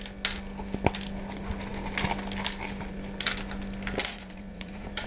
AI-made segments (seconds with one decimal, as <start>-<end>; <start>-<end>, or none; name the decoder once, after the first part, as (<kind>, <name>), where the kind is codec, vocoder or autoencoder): 4.0-5.1 (vocoder, Vocos)